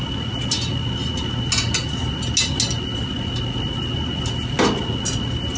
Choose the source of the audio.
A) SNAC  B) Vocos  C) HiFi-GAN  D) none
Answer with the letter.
D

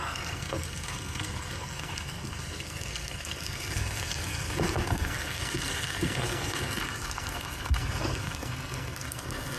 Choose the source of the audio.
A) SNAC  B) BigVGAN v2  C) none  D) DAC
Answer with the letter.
A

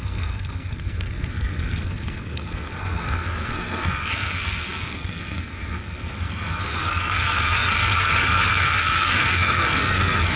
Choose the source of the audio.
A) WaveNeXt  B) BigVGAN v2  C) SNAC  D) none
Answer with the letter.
C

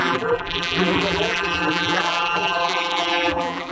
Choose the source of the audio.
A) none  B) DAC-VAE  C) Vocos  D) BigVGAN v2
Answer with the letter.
D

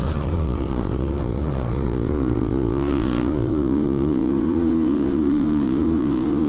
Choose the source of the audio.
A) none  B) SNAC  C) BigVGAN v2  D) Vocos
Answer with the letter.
D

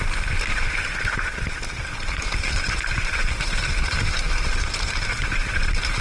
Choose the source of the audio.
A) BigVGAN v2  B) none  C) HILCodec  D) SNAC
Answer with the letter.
A